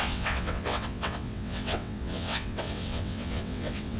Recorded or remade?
remade